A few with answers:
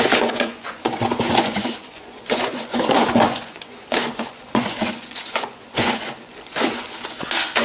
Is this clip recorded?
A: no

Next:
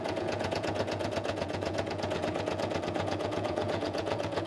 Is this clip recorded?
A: no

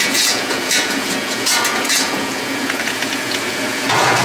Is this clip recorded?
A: no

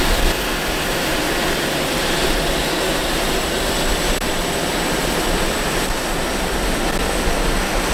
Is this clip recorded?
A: yes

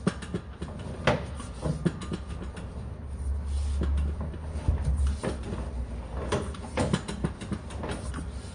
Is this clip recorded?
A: yes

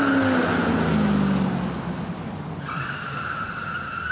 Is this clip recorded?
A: yes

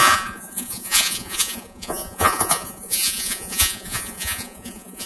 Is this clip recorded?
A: no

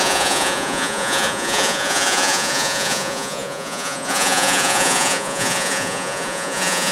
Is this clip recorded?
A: no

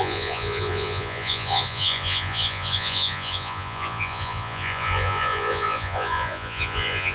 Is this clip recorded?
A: no